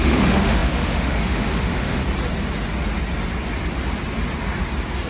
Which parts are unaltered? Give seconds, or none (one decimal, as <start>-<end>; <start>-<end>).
2.0-5.1